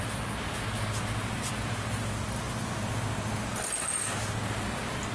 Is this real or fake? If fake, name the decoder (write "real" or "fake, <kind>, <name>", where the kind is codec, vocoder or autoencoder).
real